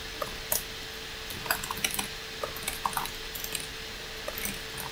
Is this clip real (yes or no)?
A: yes